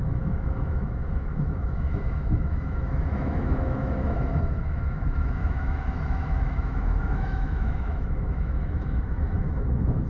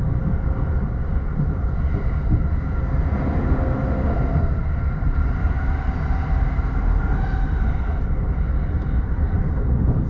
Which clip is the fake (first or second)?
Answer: first